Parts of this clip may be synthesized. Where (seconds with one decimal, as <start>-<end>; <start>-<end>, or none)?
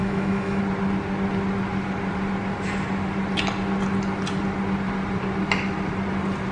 0.0-0.6